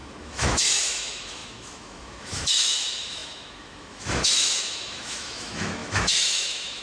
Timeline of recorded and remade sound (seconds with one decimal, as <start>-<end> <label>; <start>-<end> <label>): 0.0-6.8 remade